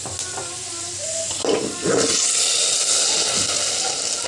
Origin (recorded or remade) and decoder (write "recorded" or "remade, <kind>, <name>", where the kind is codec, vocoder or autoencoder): recorded